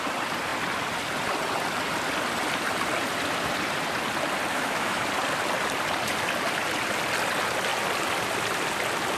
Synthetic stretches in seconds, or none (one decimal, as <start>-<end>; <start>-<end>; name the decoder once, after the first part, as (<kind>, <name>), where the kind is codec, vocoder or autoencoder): 4.5-5.0 (autoencoder, DAC-VAE)